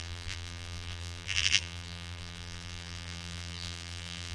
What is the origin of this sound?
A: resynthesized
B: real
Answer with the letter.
A